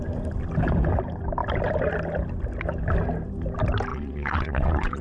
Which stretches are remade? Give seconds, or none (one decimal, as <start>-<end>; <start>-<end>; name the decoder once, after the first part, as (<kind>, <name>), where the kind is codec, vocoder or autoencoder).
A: 3.9-5.0 (vocoder, WaveNeXt)